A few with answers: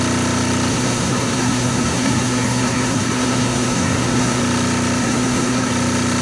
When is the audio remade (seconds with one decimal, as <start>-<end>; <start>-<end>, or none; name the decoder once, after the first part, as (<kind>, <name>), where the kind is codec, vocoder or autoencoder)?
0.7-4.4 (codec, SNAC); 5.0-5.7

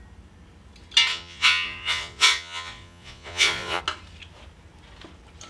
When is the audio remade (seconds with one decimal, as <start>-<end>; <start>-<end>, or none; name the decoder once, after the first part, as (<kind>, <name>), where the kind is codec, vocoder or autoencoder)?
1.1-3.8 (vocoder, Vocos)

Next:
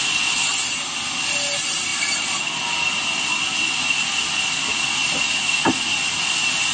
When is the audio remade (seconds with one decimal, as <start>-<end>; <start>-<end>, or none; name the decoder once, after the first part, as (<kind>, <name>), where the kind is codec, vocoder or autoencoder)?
none